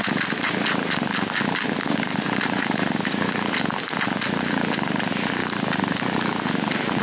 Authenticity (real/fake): real